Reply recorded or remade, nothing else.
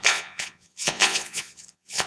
remade